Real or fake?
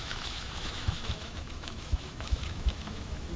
fake